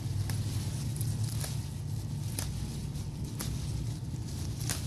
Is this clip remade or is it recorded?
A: recorded